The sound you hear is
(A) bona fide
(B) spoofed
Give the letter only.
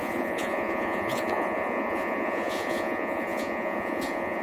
B